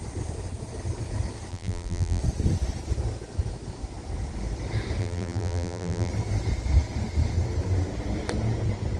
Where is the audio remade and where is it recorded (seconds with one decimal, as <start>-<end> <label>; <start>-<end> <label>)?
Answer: 0.0-1.5 recorded; 1.5-2.2 remade; 2.2-5.0 recorded; 5.0-6.1 remade; 6.1-9.0 recorded